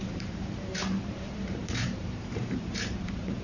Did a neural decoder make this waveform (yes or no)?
yes